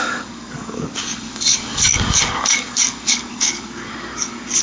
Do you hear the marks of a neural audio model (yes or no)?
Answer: yes